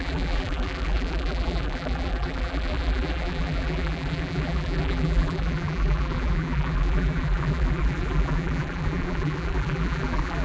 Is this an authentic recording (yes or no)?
no